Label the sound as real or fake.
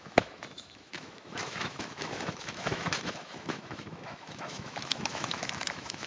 fake